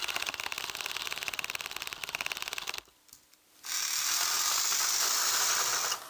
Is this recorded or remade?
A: recorded